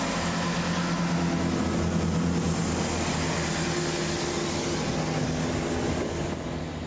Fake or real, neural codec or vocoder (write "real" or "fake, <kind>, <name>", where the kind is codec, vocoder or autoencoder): real